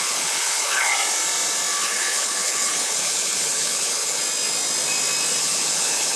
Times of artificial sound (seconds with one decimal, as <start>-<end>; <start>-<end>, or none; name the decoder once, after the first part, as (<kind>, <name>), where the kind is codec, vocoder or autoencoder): 0.0-0.9 (codec, HILCodec); 1.8-4.2; 5.4-6.2